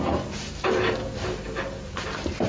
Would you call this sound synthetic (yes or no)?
yes